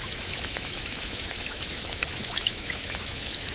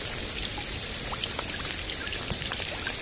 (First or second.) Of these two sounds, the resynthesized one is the first